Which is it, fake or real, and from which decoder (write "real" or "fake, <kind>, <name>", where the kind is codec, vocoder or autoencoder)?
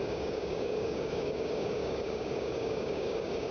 fake, codec, DAC